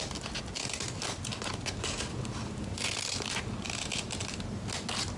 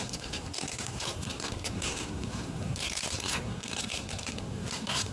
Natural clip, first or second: first